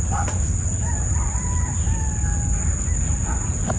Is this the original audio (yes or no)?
yes